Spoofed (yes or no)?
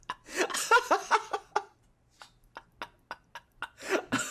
no